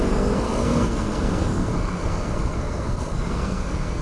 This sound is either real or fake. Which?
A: fake